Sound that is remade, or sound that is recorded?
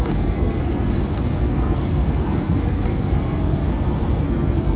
remade